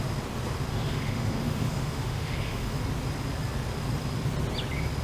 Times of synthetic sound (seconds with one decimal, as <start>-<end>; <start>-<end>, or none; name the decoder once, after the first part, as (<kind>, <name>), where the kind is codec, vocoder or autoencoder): 0.7-2.7 (autoencoder, DAC-VAE)